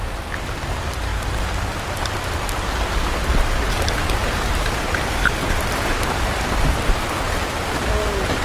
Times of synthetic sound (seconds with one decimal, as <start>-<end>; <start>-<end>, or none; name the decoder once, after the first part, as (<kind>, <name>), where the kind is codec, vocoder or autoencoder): 4.2-6.4 (vocoder, BigVGAN v2)